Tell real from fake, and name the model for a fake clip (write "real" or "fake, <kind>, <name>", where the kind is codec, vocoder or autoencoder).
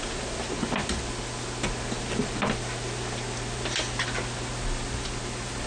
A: real